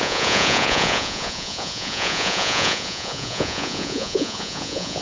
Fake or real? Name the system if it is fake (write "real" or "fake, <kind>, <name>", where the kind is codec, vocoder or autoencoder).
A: fake, vocoder, Vocos